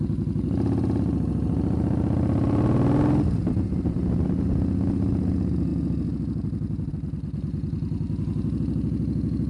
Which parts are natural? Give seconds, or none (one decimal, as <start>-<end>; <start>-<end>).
0.0-9.5